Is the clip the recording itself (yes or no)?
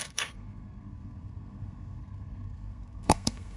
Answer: no